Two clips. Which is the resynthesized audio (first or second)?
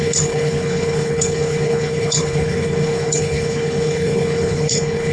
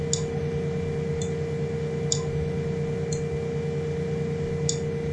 first